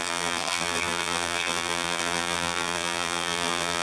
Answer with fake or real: fake